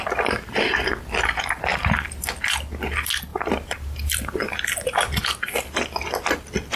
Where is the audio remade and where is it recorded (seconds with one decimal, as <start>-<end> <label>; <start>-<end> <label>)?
0.0-1.7 recorded; 1.7-2.3 remade; 2.3-3.3 recorded; 3.3-4.6 remade; 4.6-6.8 recorded